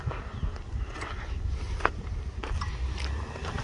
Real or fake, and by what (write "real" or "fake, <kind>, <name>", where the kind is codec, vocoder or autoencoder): real